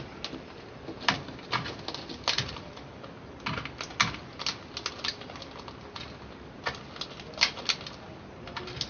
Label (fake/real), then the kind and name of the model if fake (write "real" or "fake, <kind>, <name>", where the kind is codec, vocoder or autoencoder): real